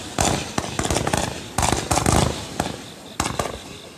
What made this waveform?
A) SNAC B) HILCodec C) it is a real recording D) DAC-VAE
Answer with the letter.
C